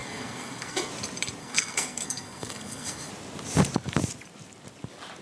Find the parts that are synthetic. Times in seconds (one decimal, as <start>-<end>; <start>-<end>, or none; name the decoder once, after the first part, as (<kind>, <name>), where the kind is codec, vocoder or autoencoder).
0.0-0.9 (codec, SNAC); 1.4-3.1